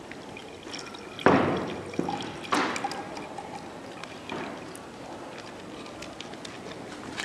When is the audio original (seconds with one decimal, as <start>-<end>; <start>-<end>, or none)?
0.0-7.2

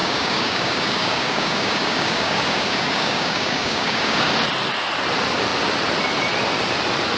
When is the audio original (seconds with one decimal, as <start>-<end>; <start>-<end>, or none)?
4.3-7.2

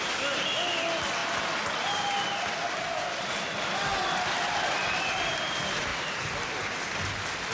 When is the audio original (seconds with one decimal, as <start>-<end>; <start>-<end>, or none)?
0.0-7.5

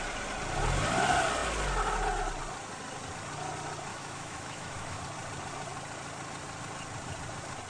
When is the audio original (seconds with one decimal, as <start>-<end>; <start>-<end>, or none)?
0.0-3.9; 5.0-7.7

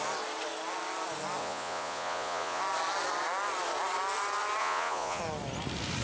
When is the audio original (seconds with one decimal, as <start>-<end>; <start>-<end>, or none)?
0.0-1.4; 2.6-4.6; 5.2-6.0